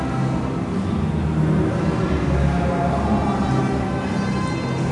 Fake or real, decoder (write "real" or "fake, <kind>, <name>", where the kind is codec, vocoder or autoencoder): real